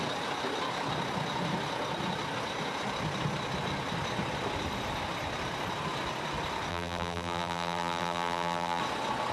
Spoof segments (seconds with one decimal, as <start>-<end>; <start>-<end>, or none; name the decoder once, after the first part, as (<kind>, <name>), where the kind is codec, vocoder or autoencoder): 6.7-8.8 (vocoder, BigVGAN v2)